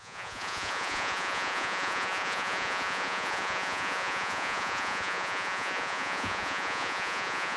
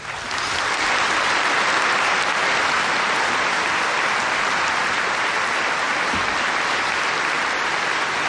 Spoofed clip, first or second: first